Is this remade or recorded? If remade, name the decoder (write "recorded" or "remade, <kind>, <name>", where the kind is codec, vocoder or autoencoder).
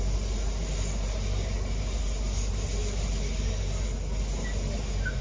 recorded